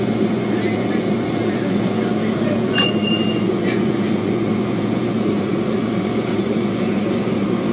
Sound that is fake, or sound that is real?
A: fake